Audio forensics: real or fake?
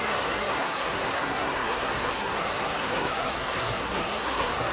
fake